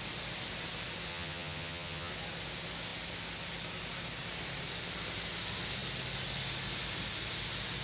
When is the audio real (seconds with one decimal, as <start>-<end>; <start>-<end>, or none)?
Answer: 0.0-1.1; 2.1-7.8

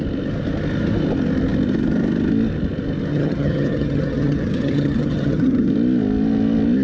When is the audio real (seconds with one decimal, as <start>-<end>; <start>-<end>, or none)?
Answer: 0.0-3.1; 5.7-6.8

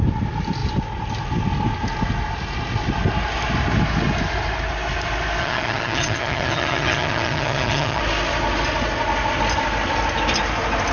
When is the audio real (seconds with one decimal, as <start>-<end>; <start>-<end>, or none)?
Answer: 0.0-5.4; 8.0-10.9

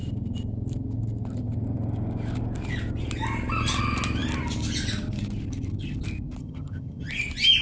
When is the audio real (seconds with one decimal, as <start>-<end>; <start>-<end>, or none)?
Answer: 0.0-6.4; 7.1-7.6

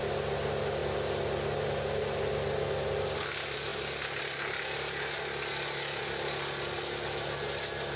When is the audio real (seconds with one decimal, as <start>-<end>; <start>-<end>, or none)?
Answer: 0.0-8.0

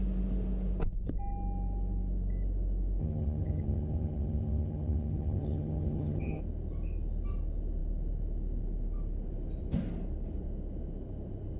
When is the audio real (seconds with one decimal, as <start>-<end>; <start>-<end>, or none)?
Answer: 0.0-3.0; 6.4-11.6

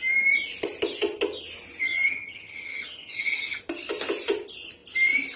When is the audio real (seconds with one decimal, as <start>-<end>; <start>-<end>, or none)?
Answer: 0.0-1.8; 3.6-5.4

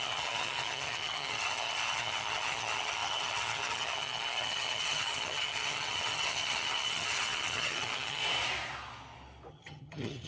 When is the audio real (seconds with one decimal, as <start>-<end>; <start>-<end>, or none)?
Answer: 8.2-9.5